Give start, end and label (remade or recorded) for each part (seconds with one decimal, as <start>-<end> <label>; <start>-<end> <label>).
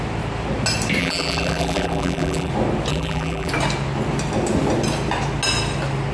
0.0-1.0 recorded; 1.0-2.5 remade; 2.5-2.9 recorded; 2.9-3.5 remade; 3.5-6.1 recorded